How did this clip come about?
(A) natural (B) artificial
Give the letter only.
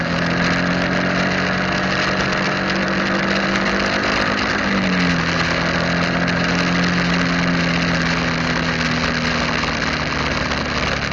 A